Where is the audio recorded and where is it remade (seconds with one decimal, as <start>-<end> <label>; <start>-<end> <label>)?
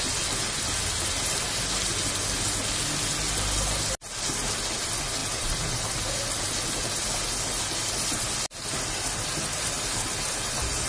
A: 0.0-10.9 recorded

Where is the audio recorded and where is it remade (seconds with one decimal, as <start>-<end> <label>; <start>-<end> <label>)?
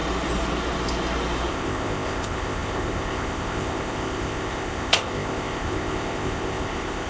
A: 0.0-1.5 recorded; 1.5-7.1 remade